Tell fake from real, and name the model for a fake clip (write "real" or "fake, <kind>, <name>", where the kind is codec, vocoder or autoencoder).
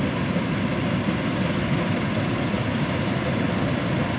real